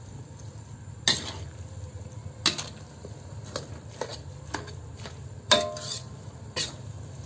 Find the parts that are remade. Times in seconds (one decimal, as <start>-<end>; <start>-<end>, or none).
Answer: 4.1-7.3